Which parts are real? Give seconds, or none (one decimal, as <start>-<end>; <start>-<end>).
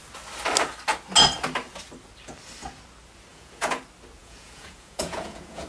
0.0-3.3; 3.8-4.2